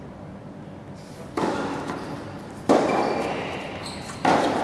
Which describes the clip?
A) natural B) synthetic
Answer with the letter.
A